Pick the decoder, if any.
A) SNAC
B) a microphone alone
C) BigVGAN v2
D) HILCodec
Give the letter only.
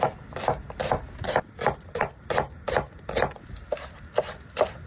B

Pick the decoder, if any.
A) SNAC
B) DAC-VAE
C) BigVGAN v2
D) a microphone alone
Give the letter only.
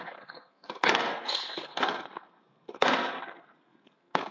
A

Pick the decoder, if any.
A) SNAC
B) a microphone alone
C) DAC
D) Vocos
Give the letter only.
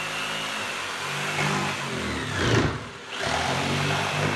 B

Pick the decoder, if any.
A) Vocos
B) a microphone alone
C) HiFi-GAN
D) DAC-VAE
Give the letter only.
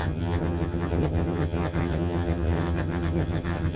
C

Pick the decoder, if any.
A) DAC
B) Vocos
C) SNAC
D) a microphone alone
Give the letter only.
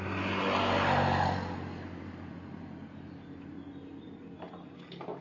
D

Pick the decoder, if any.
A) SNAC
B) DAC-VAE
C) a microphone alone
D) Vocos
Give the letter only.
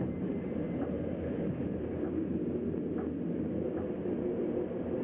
C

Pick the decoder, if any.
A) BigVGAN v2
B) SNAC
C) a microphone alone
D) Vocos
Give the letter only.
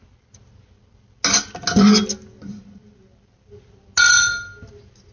C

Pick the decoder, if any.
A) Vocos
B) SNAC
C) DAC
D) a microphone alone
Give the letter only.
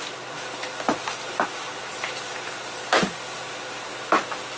D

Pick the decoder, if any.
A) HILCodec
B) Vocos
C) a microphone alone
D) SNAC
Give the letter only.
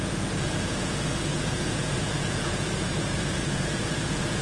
B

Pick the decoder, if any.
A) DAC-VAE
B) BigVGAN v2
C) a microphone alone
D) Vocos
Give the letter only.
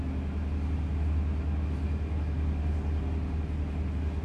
C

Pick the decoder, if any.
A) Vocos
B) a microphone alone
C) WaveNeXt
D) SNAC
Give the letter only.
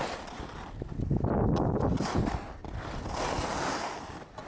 B